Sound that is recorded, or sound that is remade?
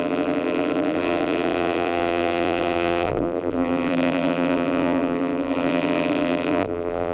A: remade